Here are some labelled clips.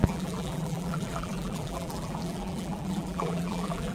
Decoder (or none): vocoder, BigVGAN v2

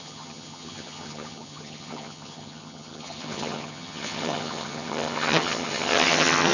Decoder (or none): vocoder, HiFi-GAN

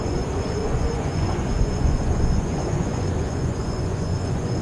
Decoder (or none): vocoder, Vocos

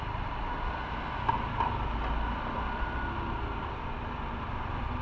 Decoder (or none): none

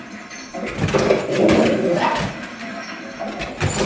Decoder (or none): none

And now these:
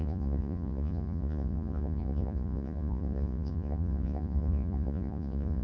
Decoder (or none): vocoder, Vocos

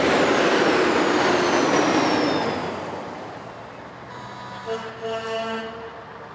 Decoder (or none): none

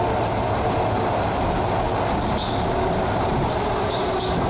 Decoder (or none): none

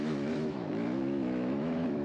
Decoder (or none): autoencoder, DAC-VAE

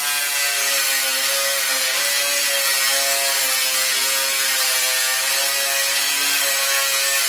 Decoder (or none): none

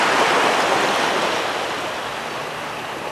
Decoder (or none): none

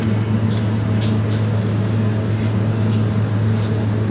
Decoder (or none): none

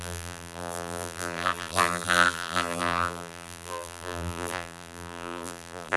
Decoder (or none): vocoder, BigVGAN v2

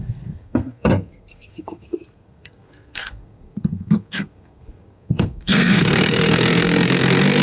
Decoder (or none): codec, SNAC